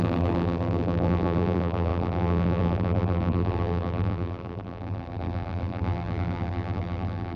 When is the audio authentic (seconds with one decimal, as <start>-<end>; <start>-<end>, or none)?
none